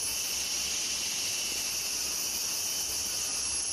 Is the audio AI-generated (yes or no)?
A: no